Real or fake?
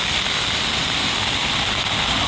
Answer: real